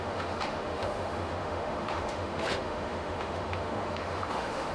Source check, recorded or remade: remade